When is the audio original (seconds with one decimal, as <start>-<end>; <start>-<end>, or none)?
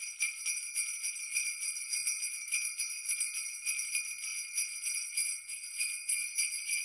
0.0-4.3